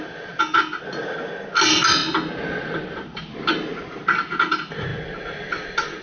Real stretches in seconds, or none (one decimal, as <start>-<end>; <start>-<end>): 0.0-2.0; 3.2-6.0